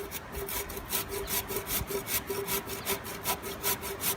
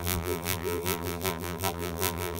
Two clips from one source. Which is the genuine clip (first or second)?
first